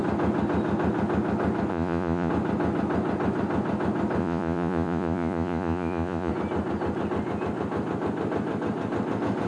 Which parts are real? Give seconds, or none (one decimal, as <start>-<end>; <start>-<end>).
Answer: 0.0-1.7; 2.3-4.2; 6.3-9.5